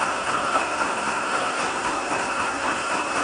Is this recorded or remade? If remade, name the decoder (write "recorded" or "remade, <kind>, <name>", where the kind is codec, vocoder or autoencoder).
remade, codec, SNAC